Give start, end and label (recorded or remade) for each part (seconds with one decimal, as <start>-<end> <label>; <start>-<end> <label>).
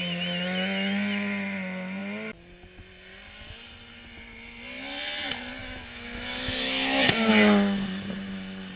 0.0-5.6 recorded; 5.6-7.3 remade; 7.3-8.8 recorded